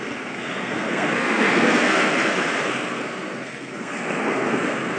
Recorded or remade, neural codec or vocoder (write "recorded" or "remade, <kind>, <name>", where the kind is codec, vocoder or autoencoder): remade, codec, SNAC